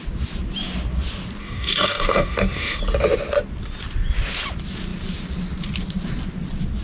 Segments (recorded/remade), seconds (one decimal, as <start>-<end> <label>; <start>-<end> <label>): 0.0-1.4 recorded; 1.4-2.8 remade; 2.8-6.8 recorded